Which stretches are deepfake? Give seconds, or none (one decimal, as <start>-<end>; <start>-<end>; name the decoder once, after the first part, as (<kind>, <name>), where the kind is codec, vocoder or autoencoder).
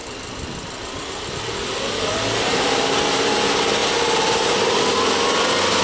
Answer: 0.0-3.3 (vocoder, BigVGAN v2)